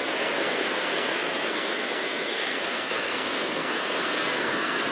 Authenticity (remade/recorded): remade